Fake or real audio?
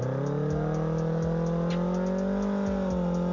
real